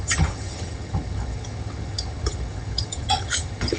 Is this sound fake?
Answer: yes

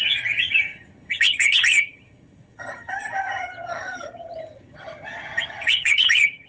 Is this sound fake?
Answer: yes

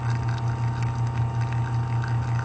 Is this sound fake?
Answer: no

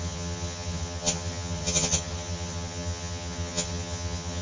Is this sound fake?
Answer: yes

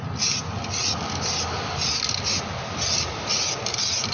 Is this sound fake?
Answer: no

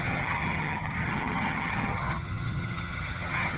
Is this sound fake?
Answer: yes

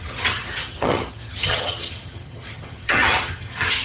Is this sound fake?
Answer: yes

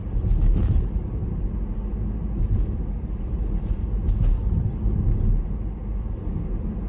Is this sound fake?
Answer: no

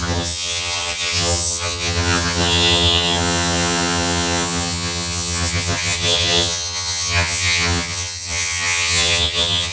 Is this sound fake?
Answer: yes